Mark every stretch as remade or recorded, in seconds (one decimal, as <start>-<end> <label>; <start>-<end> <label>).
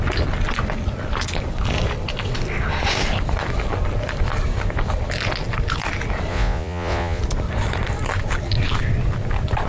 0.0-6.3 recorded; 6.3-7.2 remade; 7.2-9.7 recorded